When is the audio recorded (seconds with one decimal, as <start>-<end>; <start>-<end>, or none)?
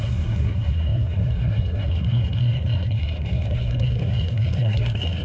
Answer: none